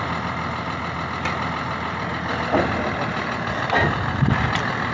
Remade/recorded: recorded